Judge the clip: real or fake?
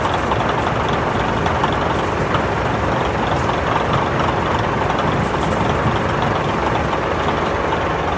real